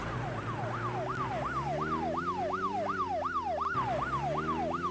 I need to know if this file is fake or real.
real